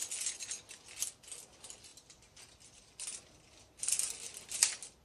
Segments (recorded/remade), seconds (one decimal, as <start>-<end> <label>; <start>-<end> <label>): 0.0-5.0 recorded